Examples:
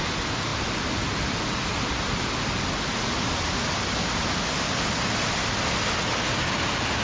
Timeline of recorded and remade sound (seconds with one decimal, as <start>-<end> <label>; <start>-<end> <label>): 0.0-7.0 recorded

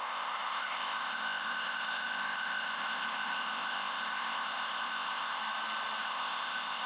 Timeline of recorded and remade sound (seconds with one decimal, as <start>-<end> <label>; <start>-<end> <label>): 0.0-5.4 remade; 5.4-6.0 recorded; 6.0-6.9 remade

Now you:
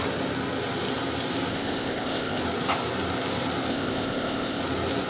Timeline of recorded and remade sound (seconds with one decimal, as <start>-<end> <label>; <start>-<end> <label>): 0.0-1.5 recorded; 1.5-2.4 remade; 2.4-3.7 recorded; 3.7-4.6 remade; 4.6-5.1 recorded